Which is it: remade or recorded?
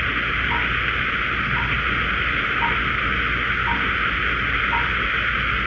recorded